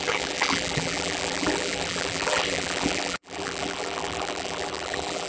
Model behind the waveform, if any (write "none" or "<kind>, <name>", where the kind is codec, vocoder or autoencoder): vocoder, BigVGAN v2